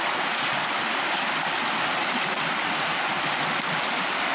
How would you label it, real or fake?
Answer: real